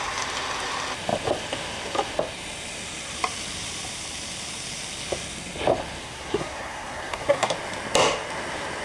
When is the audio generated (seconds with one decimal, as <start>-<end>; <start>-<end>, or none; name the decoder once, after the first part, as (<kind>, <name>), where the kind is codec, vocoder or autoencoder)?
6.0-7.5 (codec, SNAC)